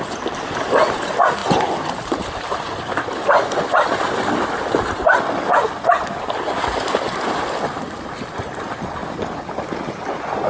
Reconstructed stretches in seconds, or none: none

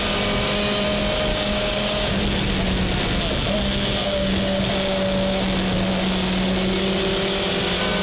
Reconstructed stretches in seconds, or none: 1.3-2.2; 4.0-4.6

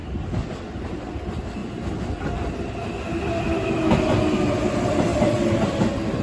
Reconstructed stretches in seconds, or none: 0.0-0.8; 5.1-5.7

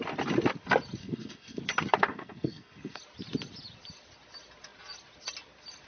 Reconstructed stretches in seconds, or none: 1.0-1.6; 2.1-3.0

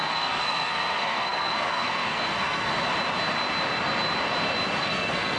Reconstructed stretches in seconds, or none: 0.0-2.7; 4.8-5.4

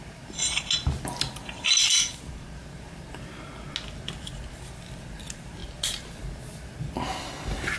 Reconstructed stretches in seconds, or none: none